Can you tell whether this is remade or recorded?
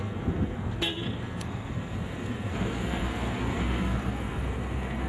remade